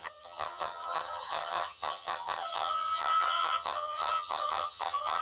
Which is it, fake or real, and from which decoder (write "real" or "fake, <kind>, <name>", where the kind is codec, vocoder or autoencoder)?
fake, vocoder, HiFi-GAN